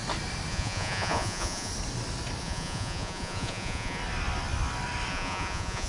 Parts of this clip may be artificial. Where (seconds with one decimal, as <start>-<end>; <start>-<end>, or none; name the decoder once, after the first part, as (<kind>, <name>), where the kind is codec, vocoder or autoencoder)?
0.5-1.7 (vocoder, Vocos); 2.4-4.0; 5.1-5.9